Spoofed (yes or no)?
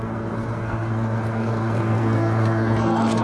yes